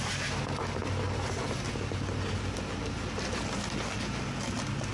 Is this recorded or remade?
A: recorded